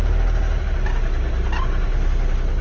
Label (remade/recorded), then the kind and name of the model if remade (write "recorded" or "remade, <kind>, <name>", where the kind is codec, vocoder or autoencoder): recorded